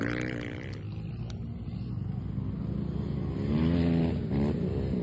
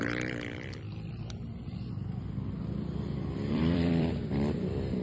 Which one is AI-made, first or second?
second